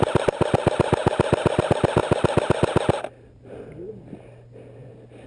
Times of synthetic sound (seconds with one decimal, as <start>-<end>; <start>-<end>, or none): none